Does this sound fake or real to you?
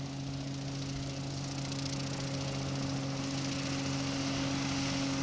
real